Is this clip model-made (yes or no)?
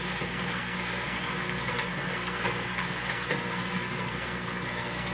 yes